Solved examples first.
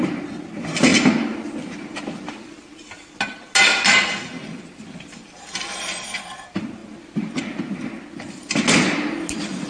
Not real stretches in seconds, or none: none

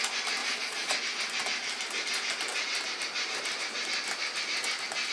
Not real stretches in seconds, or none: 0.4-0.9 (vocoder, Vocos)

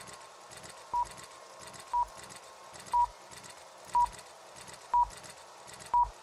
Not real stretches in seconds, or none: none

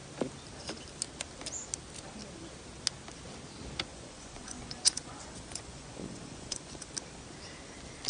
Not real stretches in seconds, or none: 3.9-6.9 (vocoder, Vocos)

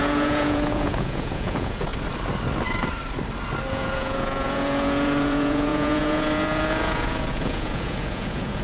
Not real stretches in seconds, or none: 0.0-1.9 (vocoder, Vocos); 3.7-8.6

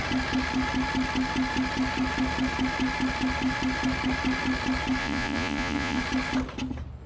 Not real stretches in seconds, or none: 5.0-6.0 (vocoder, Vocos)